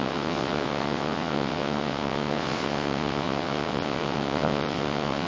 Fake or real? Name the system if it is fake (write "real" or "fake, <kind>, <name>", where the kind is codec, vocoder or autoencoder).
fake, vocoder, WaveNeXt